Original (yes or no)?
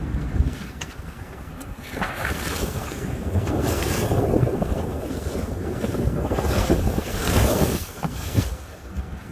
no